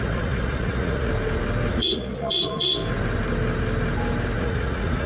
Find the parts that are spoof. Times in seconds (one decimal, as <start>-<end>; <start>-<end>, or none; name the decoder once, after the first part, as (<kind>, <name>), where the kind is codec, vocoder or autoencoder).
0.0-1.1 (vocoder, Vocos); 1.7-2.8; 4.4-5.1